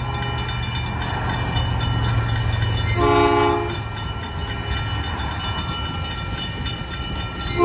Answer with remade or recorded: recorded